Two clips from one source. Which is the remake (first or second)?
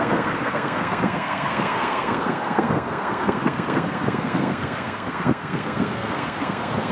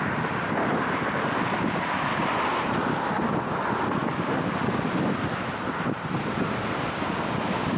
first